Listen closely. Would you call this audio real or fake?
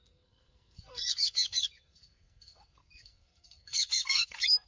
fake